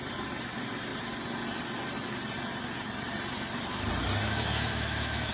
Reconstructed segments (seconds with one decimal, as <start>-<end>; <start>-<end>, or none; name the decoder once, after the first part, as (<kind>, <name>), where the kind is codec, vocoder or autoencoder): 4.3-5.3 (autoencoder, DAC-VAE)